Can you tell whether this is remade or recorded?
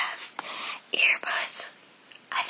recorded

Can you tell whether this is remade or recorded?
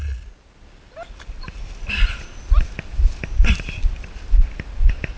recorded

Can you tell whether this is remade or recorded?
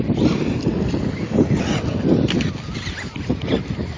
recorded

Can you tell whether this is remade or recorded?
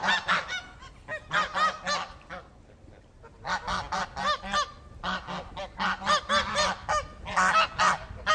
recorded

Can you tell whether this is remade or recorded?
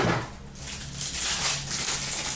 recorded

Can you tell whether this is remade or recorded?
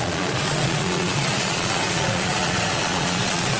remade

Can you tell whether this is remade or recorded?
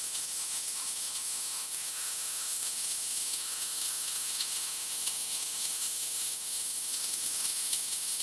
remade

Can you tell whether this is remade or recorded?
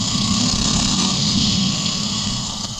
remade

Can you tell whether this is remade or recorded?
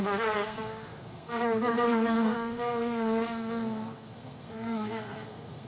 remade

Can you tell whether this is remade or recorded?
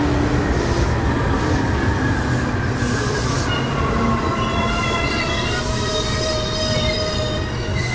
recorded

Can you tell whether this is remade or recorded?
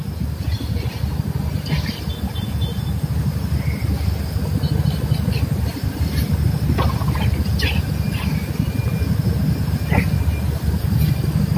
recorded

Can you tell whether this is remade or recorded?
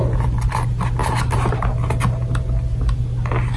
recorded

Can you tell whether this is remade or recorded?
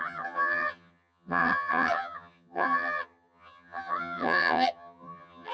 remade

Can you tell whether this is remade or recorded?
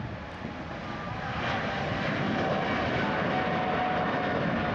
recorded